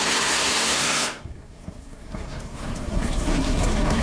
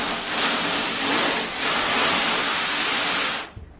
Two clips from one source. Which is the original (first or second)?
second